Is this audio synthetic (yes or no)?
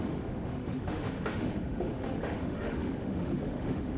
yes